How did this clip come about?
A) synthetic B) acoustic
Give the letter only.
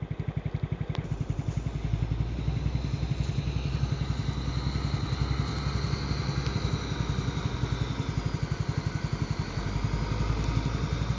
B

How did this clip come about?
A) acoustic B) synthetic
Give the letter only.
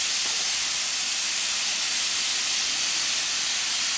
A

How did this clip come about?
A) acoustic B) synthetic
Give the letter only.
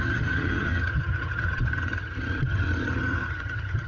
B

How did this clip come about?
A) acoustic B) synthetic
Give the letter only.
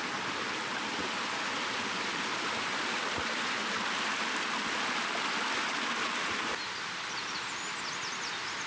A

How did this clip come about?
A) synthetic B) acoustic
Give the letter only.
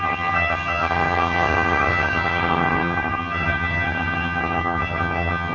A